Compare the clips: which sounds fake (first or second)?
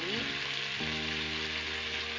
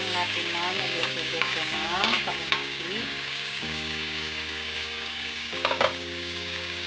second